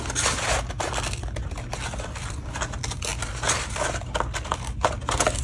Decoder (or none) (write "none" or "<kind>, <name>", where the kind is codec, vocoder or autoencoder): none